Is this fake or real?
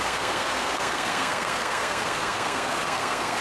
fake